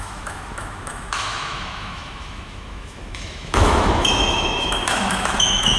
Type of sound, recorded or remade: remade